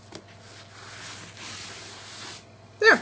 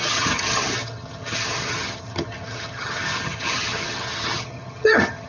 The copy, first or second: second